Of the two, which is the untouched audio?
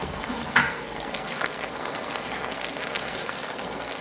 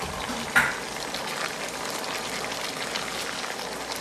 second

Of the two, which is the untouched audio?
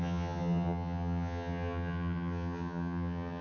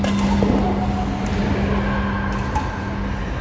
second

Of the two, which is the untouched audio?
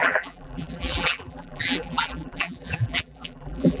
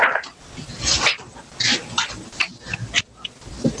second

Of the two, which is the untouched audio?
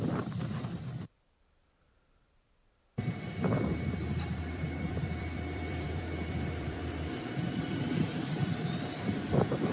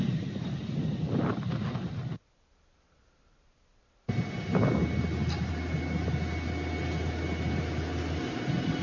second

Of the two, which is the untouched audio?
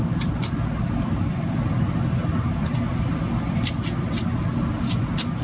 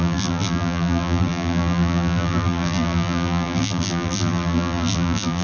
first